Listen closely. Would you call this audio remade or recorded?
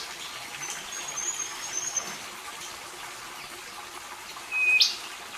recorded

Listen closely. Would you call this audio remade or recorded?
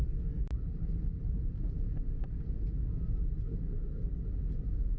recorded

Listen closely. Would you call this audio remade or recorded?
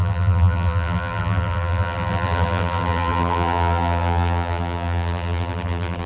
remade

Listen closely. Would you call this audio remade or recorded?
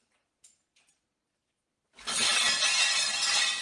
recorded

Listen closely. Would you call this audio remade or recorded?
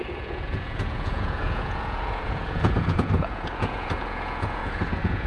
remade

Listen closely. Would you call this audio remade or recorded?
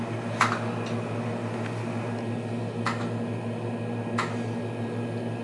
recorded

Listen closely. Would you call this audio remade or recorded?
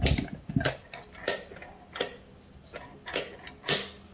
recorded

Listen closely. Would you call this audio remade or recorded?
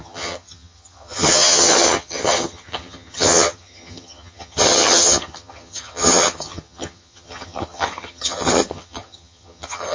remade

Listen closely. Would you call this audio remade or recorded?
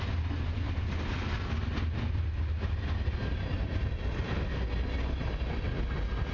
recorded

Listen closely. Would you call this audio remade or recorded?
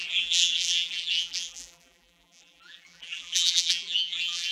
remade